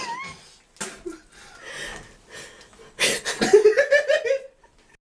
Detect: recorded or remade recorded